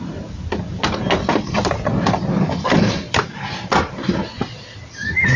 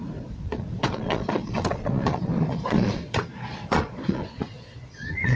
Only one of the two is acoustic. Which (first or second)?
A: first